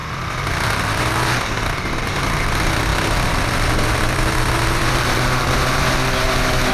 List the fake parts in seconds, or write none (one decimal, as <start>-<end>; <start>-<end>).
0.0-1.4; 2.9-6.1